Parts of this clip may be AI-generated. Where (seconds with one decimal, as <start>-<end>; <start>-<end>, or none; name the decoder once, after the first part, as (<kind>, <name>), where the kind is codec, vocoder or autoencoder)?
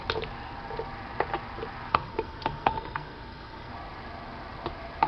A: 1.9-3.7 (codec, SNAC)